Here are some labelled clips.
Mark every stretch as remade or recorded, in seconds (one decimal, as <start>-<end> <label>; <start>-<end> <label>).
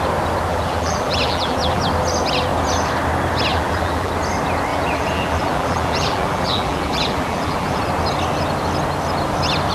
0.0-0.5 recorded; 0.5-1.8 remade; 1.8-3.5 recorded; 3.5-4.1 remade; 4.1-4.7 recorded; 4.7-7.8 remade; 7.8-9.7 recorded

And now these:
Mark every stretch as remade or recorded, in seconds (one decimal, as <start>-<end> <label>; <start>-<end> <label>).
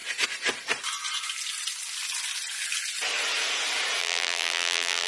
0.0-4.0 recorded; 4.0-5.1 remade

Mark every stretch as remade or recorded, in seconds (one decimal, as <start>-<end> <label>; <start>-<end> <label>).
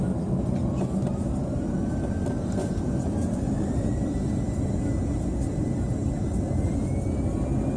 0.0-7.8 recorded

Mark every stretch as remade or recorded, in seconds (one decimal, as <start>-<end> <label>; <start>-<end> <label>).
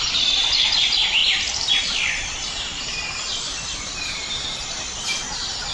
0.0-1.2 recorded; 1.2-4.2 remade; 4.2-5.7 recorded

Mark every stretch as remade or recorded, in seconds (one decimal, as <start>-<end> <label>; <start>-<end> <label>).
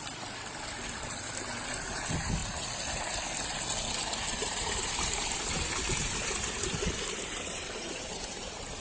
0.0-4.4 recorded; 4.4-8.8 remade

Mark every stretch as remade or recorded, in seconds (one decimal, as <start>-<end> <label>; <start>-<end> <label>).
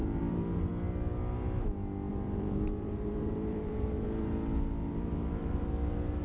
0.0-0.7 remade; 0.7-2.1 recorded; 2.1-4.3 remade; 4.3-4.8 recorded; 4.8-5.7 remade; 5.7-6.2 recorded